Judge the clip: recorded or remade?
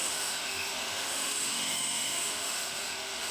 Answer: remade